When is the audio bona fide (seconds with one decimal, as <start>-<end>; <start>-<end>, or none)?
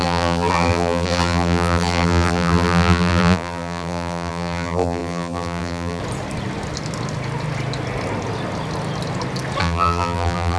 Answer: 6.0-9.6